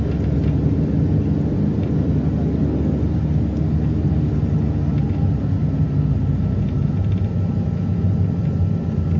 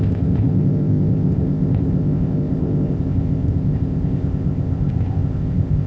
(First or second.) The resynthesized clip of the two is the second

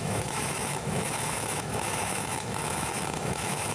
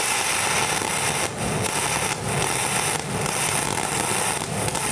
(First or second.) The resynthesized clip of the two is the first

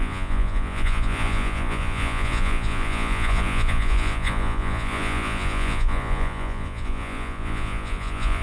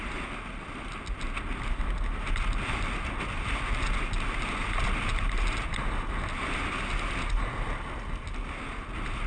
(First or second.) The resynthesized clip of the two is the first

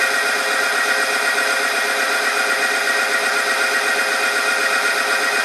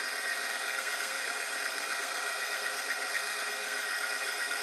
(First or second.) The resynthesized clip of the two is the second